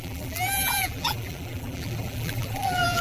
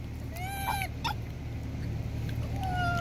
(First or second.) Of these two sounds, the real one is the second